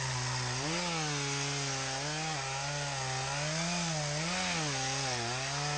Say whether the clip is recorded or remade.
recorded